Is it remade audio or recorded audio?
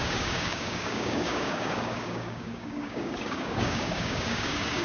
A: remade